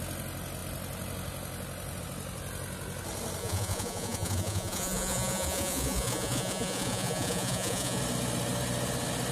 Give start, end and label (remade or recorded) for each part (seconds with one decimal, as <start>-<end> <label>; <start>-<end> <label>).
0.0-3.4 recorded; 3.4-8.0 remade; 8.0-9.3 recorded